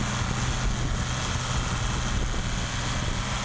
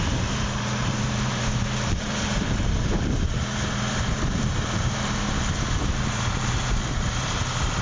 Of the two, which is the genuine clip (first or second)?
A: first